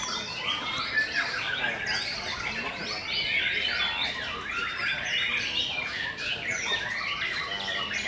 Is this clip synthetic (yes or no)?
no